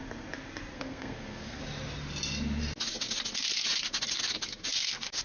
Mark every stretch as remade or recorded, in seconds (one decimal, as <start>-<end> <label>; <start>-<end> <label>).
0.0-0.7 recorded; 0.7-1.6 remade; 1.6-5.2 recorded